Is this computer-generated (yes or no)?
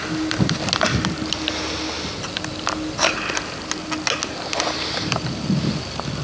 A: no